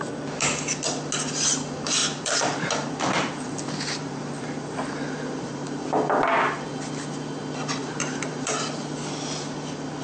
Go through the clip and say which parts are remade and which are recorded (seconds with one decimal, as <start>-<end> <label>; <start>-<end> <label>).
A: 0.0-2.0 recorded; 2.0-5.8 remade; 5.8-7.8 recorded; 7.8-8.5 remade; 8.5-10.0 recorded